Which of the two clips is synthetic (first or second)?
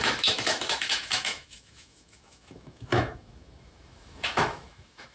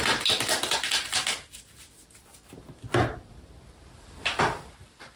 first